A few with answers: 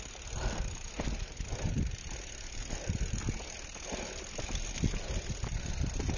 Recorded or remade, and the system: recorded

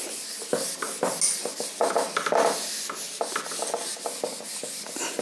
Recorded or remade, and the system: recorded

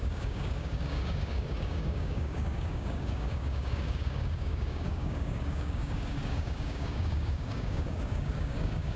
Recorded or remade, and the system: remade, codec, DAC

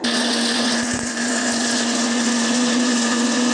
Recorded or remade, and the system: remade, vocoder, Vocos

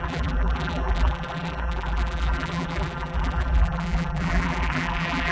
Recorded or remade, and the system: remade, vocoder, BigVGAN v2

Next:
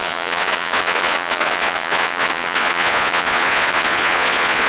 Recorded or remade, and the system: remade, vocoder, Vocos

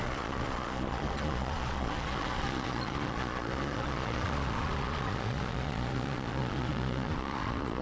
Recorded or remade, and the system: remade, vocoder, Vocos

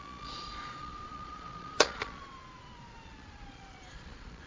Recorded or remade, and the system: remade, vocoder, Vocos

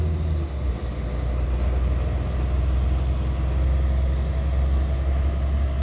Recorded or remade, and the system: recorded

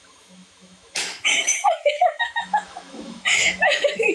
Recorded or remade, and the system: remade, autoencoder, DAC-VAE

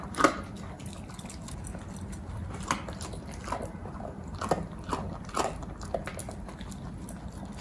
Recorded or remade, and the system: recorded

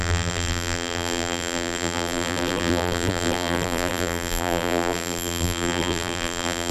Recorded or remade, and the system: remade, vocoder, BigVGAN v2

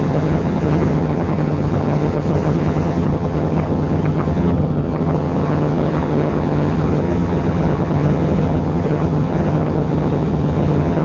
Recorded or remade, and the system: remade, vocoder, HiFi-GAN